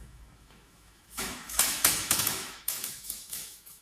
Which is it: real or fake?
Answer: fake